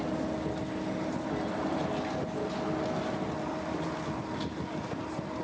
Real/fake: real